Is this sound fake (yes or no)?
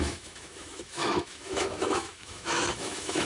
yes